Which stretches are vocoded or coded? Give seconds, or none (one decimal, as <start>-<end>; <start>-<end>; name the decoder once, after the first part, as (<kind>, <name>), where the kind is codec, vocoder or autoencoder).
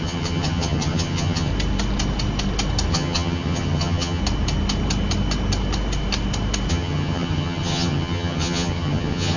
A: 0.0-1.5 (vocoder, HiFi-GAN); 2.9-4.2; 6.7-9.4